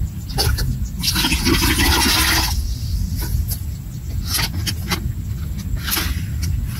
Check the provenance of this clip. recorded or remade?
recorded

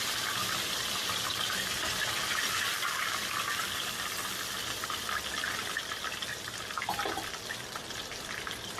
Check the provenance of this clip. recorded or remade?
remade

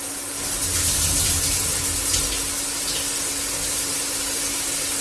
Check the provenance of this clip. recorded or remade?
recorded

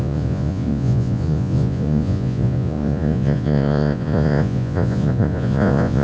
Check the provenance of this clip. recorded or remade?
remade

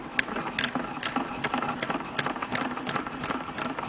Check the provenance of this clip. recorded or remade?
recorded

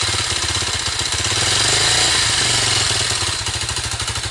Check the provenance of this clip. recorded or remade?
recorded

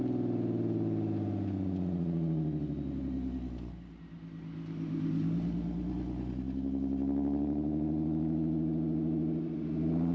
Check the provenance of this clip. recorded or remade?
recorded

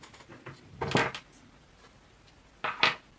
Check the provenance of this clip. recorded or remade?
recorded